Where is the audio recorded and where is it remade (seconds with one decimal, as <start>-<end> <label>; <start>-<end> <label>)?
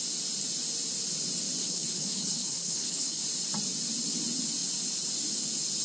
0.0-1.6 recorded; 1.6-3.2 remade; 3.2-5.8 recorded